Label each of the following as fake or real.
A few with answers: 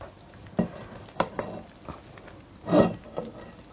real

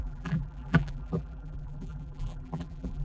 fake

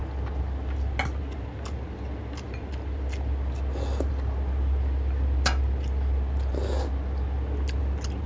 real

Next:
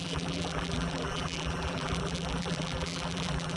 fake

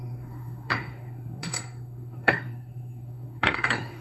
fake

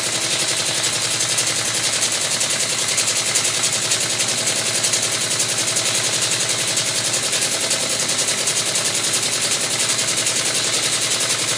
real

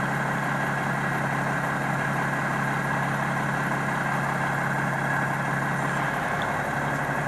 real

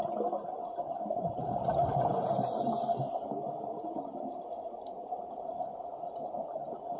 real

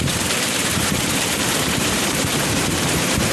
fake